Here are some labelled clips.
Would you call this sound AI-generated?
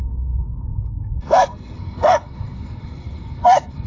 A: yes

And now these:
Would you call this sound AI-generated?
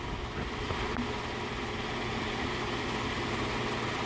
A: no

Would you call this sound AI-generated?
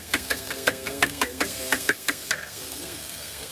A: yes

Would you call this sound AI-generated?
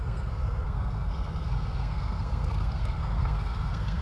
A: yes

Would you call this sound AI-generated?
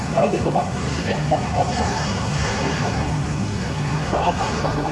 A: yes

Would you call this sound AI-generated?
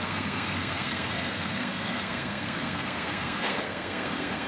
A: yes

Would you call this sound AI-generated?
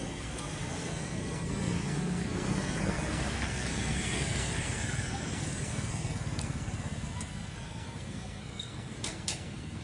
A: yes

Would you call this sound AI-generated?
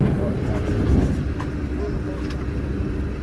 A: no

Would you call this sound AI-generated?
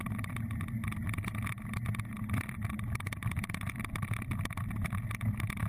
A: no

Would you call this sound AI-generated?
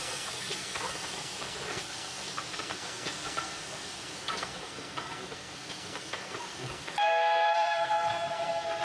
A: yes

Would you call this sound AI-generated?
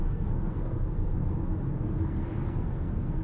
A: yes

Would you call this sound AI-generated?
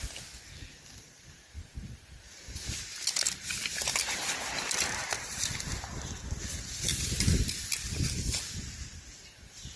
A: no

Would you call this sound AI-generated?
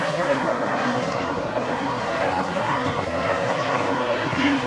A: yes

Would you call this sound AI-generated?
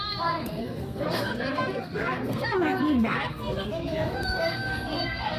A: yes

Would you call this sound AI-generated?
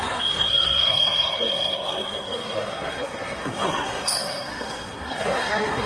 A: yes